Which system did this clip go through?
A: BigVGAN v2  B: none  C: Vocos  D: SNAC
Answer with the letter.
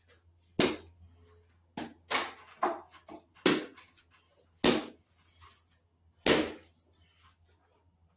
B